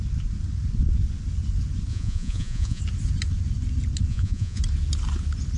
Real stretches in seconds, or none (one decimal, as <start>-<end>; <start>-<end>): 0.0-1.9; 2.8-4.1; 4.6-5.6